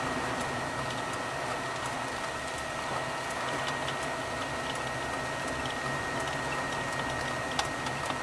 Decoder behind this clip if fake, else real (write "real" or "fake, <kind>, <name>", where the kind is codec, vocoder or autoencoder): real